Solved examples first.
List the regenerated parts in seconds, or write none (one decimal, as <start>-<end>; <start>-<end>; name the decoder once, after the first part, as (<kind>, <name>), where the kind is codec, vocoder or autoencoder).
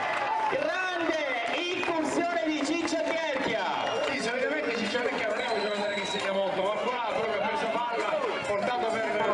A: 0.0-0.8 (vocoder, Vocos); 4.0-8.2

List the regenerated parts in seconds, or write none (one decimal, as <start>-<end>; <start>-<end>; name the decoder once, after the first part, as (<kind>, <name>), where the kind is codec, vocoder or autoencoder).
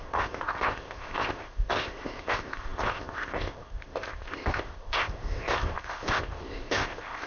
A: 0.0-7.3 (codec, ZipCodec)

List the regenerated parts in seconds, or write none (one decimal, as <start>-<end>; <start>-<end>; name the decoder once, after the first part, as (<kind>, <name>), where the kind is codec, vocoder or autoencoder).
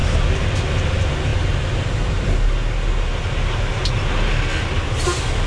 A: none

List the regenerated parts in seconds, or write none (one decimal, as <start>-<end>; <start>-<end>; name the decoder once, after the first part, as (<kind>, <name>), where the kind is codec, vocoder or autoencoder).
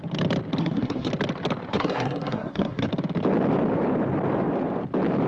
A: 0.6-1.1 (codec, SNAC); 1.7-2.9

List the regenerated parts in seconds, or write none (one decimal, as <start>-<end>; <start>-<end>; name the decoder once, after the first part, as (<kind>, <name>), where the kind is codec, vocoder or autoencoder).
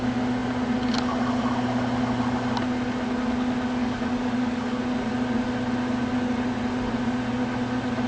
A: 3.8-4.8 (codec, DAC)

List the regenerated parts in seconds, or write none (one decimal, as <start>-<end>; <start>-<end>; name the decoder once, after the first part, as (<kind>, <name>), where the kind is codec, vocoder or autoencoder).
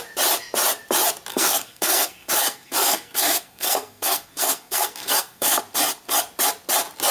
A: 1.3-5.6 (codec, SNAC)